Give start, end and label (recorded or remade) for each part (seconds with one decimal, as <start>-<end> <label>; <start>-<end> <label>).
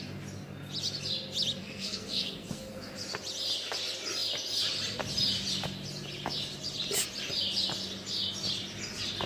0.0-1.6 recorded; 1.6-2.9 remade; 2.9-9.3 recorded